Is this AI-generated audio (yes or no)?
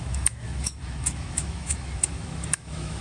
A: yes